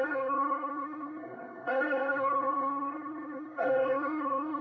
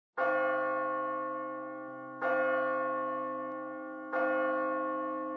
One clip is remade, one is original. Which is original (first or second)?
second